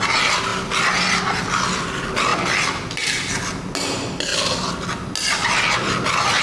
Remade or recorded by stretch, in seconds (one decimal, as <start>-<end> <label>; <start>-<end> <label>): 0.0-2.3 recorded; 2.3-3.3 remade; 3.3-6.4 recorded